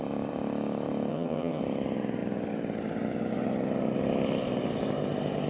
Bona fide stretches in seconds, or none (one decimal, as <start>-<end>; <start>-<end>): 0.0-1.1; 1.6-5.5